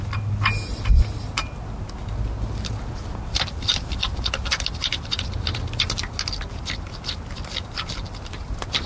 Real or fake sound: real